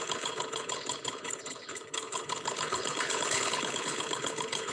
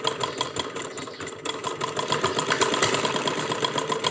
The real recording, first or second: second